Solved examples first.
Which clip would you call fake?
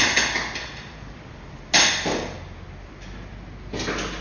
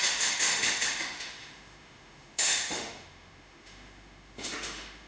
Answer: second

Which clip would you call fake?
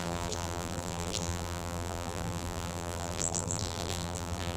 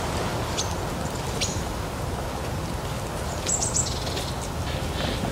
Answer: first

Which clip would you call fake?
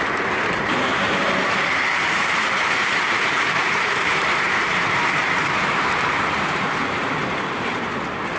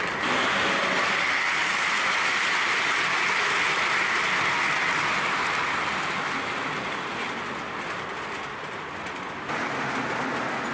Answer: first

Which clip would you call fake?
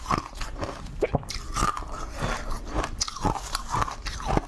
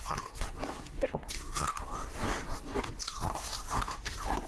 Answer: second